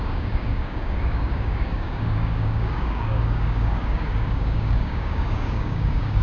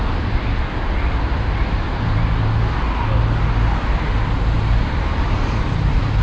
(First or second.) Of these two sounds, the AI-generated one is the first